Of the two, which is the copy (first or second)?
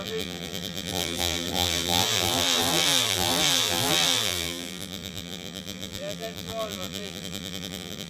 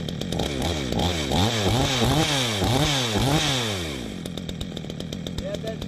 first